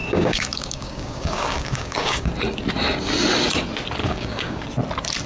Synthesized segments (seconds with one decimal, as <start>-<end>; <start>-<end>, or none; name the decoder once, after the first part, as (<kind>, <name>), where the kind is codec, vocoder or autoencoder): 0.0-2.3 (codec, DAC); 4.0-4.6